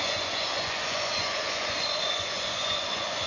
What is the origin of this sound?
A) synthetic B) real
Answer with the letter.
A